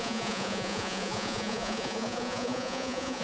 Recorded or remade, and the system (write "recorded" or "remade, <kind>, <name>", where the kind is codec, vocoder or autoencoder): remade, vocoder, Vocos